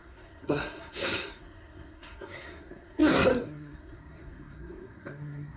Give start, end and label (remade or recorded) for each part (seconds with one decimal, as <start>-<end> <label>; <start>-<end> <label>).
0.0-5.6 remade